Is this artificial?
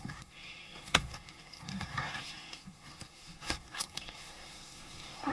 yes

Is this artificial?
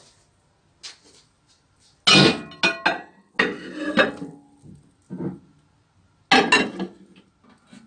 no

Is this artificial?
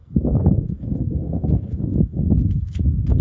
yes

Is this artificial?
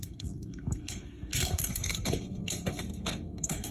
yes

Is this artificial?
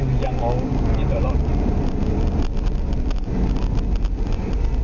no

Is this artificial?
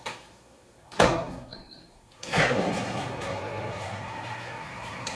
yes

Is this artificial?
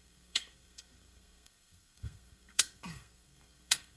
yes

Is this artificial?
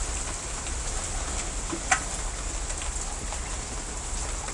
no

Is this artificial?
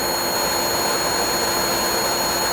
no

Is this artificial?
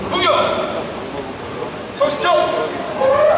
no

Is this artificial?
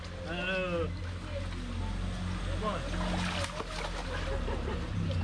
no